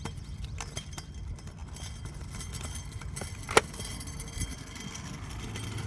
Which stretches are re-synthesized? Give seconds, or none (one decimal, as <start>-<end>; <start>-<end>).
none